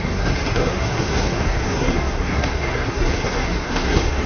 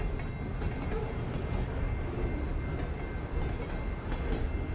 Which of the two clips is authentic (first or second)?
second